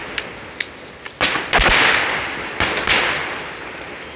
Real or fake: real